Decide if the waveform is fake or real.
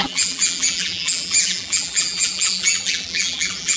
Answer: fake